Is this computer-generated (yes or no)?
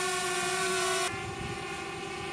yes